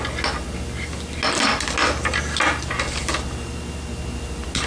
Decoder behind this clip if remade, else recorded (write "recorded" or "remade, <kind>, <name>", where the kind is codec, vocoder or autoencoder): recorded